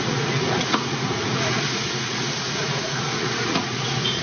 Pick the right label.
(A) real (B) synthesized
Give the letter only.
B